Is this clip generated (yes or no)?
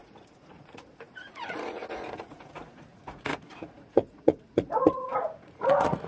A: yes